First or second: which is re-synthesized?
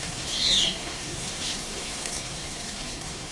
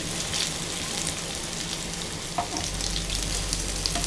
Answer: first